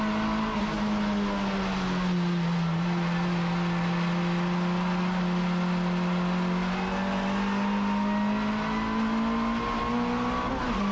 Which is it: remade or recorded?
recorded